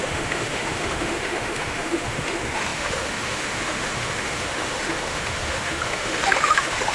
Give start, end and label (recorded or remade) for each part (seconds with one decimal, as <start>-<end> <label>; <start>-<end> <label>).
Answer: 0.0-6.9 remade